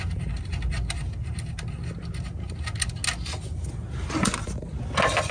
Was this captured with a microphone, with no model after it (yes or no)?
yes